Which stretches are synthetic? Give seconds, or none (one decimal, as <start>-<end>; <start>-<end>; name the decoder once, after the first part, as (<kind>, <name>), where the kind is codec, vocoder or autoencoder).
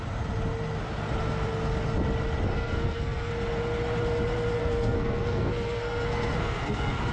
2.5-3.3 (codec, SNAC); 4.6-7.1